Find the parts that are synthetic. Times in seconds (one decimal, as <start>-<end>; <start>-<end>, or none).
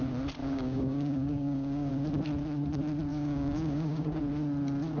0.4-1.9; 3.1-4.2